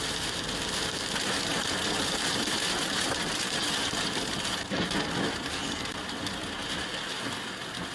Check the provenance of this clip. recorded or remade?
remade